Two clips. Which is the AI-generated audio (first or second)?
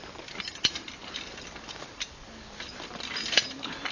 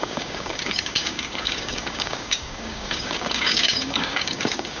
second